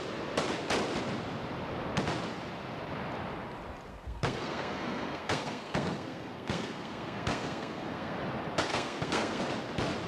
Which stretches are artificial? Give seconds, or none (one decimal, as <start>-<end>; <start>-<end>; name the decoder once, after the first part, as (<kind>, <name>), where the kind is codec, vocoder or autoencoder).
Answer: 3.9-8.2 (codec, SNAC); 8.7-9.4